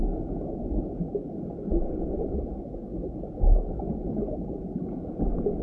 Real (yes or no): yes